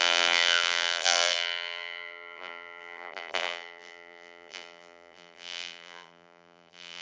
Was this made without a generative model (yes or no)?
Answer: no